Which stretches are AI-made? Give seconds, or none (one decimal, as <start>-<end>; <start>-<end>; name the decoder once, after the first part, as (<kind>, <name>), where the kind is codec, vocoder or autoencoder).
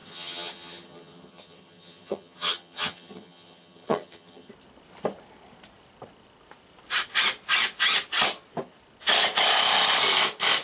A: 0.0-4.5 (vocoder, HiFi-GAN)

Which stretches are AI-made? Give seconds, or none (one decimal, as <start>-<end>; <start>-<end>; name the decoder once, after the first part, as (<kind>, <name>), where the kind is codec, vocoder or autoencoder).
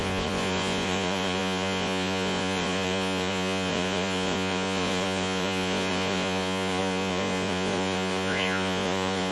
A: 0.0-9.3 (vocoder, Vocos)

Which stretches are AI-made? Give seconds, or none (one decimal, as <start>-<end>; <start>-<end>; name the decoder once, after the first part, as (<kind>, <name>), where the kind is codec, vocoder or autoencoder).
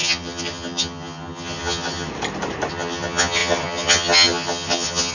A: 0.0-2.1 (vocoder, HiFi-GAN); 2.7-5.1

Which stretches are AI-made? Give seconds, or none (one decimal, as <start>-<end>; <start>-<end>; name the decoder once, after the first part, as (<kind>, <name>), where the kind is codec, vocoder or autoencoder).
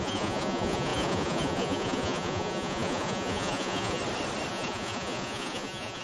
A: 0.0-4.0 (vocoder, Vocos); 4.5-6.0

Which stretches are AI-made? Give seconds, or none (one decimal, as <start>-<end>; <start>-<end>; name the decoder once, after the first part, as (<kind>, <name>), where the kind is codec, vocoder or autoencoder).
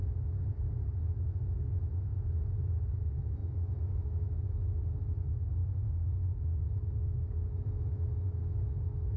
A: 1.0-2.1 (autoencoder, DAC-VAE); 2.6-9.2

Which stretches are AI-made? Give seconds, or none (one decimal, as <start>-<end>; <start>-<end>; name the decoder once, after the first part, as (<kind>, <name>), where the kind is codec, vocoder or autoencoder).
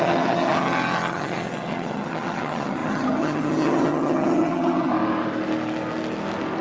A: 0.0-4.9 (vocoder, HiFi-GAN)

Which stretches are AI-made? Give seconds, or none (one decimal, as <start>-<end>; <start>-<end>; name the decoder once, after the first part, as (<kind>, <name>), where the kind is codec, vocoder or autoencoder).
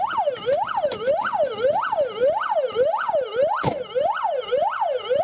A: none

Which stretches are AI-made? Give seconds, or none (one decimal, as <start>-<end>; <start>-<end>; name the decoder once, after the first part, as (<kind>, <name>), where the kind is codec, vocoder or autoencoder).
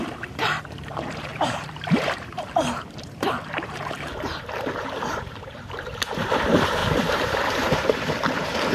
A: 0.0-8.7 (vocoder, BigVGAN v2)